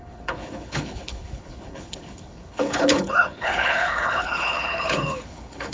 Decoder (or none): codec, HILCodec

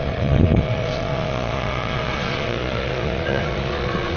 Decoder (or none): vocoder, Vocos